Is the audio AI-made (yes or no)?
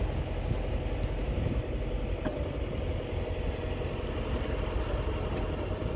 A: no